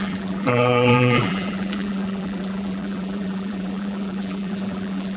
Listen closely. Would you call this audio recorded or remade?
remade